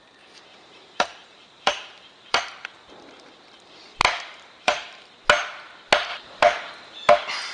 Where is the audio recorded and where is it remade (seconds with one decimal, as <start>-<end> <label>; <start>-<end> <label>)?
0.0-0.5 recorded; 0.5-2.4 remade; 2.4-4.0 recorded; 4.0-5.1 remade; 5.1-6.1 recorded; 6.1-7.1 remade; 7.1-7.5 recorded